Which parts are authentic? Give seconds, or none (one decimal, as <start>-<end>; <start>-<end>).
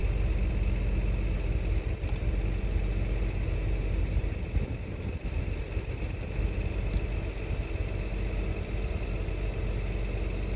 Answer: 0.0-10.6